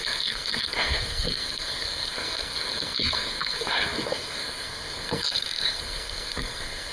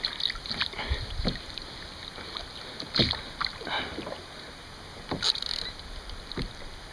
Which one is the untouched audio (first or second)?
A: second